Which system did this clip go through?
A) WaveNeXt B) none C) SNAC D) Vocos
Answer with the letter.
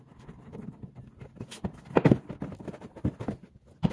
B